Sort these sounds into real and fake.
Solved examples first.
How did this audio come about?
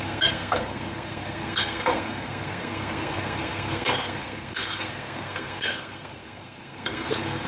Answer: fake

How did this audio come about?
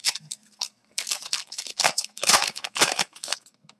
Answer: fake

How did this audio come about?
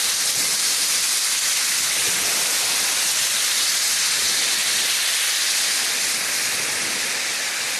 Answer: real